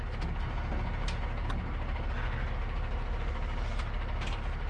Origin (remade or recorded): recorded